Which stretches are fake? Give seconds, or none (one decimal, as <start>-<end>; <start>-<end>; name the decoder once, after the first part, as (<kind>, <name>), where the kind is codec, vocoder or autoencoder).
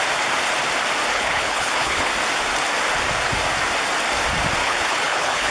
1.1-2.1 (codec, HILCodec); 4.6-5.5